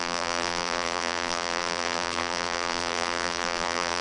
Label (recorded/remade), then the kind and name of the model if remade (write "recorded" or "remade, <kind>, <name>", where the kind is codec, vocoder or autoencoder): remade, vocoder, BigVGAN v2